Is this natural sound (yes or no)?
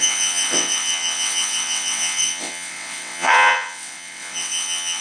no